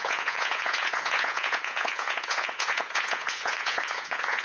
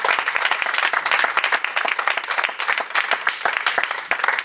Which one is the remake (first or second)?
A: first